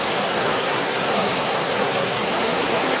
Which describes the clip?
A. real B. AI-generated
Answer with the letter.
B